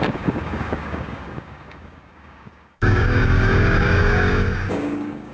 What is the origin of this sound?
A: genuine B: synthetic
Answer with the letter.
B